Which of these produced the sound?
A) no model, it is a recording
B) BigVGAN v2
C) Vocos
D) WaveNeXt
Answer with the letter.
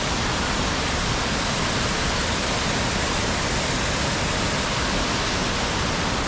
A